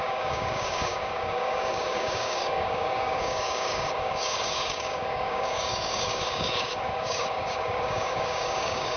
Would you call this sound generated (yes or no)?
yes